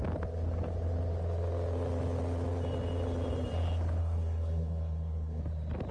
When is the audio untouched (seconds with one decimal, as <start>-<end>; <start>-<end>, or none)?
0.0-4.0; 5.4-5.9